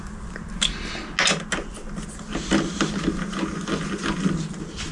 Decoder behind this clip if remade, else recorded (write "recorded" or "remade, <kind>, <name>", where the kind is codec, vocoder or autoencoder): recorded